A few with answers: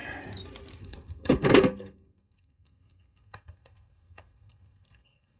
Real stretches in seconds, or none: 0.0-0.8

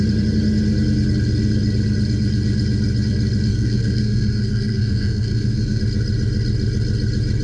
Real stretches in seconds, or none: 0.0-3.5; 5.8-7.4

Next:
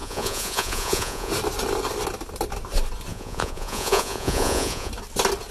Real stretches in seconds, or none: 1.3-3.1; 4.9-5.5